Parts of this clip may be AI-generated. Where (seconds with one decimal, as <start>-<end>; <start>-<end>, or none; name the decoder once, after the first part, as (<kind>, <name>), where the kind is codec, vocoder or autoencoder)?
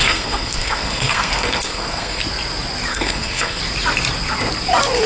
0.0-2.2 (codec, SNAC); 2.9-3.6